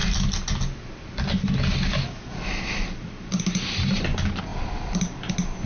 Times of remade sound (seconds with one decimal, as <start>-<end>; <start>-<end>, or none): none